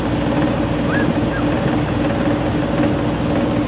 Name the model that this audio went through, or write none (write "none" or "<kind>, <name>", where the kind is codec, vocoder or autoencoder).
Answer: none